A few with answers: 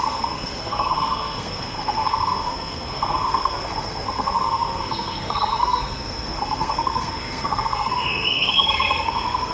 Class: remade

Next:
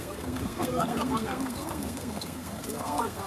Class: remade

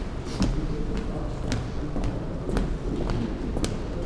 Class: recorded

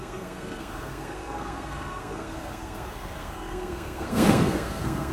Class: remade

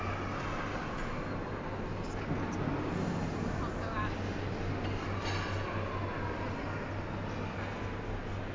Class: recorded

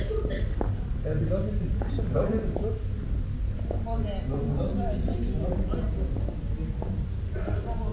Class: recorded